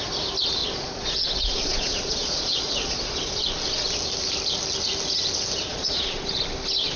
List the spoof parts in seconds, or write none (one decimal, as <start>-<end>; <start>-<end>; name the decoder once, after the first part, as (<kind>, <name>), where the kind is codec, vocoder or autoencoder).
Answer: 0.6-3.3 (vocoder, Vocos); 5.7-6.4